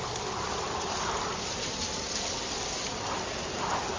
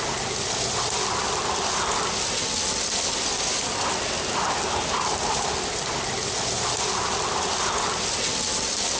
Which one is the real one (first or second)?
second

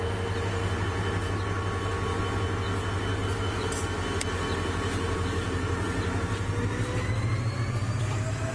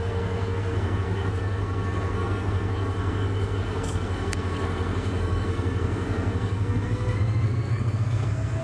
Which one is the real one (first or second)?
first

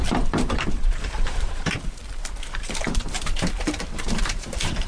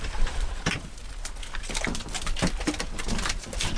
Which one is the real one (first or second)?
second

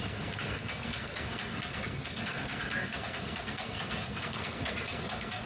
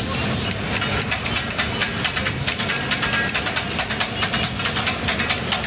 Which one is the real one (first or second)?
second